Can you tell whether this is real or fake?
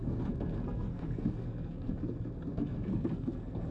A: fake